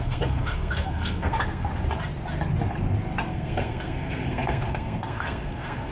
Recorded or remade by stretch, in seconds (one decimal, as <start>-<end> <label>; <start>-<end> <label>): 0.0-1.7 remade; 1.7-3.3 recorded; 3.3-5.9 remade